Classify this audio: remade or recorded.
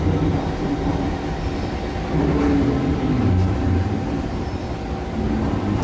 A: recorded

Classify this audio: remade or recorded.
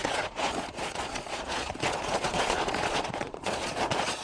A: remade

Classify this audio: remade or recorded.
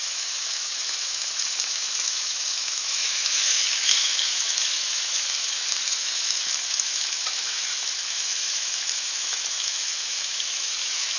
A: remade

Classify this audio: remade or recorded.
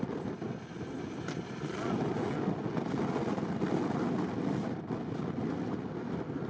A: recorded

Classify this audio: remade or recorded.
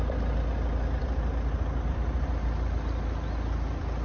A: remade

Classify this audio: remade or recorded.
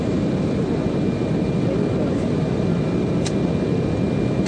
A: recorded